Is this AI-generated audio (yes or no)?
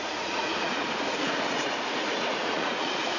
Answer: yes